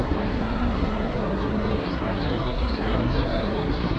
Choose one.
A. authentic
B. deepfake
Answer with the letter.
B